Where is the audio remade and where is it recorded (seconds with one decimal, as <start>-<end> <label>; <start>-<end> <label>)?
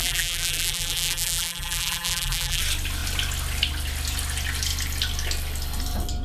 0.0-2.6 remade; 2.6-6.2 recorded